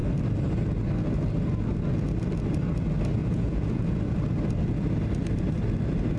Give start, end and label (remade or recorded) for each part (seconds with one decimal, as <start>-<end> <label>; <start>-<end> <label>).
0.0-3.2 recorded; 3.2-4.0 remade; 4.0-6.2 recorded